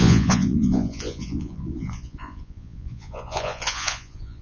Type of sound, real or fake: fake